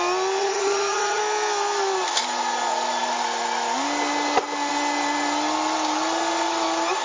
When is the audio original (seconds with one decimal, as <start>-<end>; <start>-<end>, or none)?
0.0-0.4; 1.2-7.0